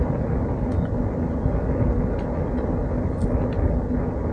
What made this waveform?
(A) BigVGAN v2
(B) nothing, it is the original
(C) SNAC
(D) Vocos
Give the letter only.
B